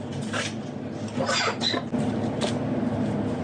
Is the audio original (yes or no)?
yes